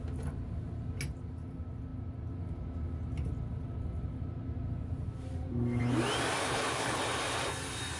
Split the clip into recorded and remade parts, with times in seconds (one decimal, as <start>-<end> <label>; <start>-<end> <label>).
0.0-6.4 recorded; 6.4-7.0 remade; 7.0-8.0 recorded